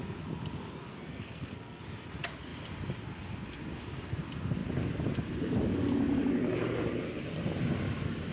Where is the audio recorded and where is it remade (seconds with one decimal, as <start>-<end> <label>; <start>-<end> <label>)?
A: 0.0-0.9 recorded; 0.9-1.8 remade; 1.8-8.3 recorded